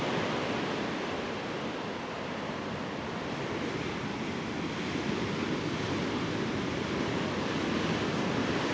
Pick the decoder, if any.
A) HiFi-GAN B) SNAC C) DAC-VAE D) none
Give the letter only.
D